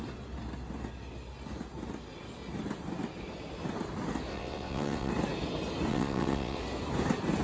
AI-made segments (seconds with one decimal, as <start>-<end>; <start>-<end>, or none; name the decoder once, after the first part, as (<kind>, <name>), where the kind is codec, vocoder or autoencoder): 4.3-5.1 (vocoder, WaveNeXt); 5.9-6.6